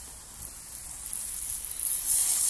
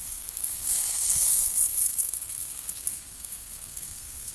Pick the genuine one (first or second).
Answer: first